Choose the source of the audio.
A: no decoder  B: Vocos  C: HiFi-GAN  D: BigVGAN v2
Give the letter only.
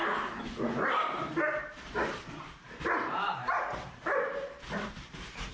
D